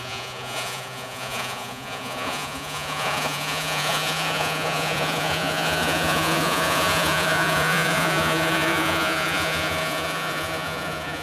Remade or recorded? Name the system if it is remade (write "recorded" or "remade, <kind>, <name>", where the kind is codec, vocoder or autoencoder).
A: remade, vocoder, Vocos